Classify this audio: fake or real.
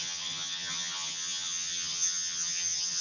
fake